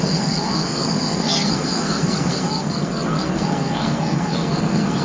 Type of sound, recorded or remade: remade